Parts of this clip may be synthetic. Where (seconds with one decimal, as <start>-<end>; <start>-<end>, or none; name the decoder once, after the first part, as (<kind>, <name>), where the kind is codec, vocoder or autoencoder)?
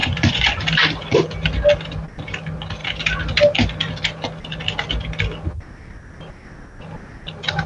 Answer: 0.0-0.6 (vocoder, Vocos)